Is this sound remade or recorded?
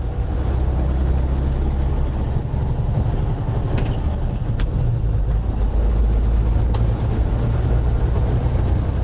recorded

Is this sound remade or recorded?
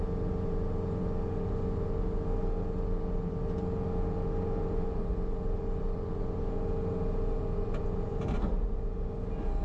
recorded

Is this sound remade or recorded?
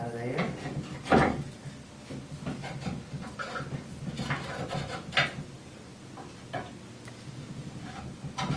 recorded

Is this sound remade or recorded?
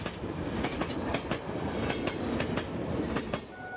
recorded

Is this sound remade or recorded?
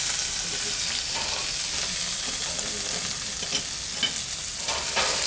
recorded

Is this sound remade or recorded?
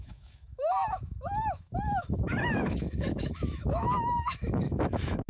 remade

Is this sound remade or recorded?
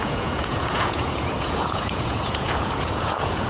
remade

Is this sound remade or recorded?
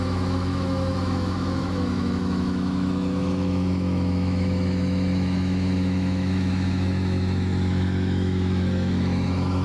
remade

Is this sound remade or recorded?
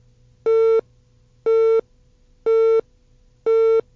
recorded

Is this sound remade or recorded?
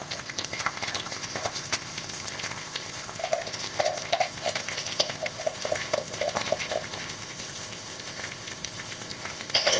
remade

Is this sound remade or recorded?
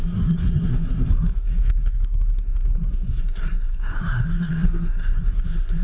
remade